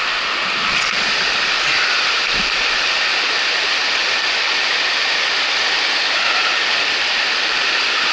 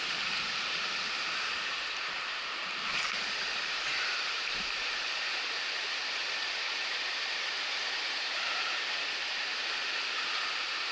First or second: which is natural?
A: first